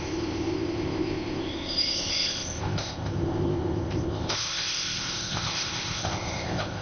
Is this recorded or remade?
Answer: remade